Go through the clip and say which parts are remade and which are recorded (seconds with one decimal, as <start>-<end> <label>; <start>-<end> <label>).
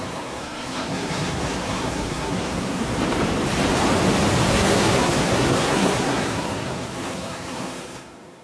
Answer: 0.0-2.9 remade; 2.9-4.5 recorded; 4.5-8.4 remade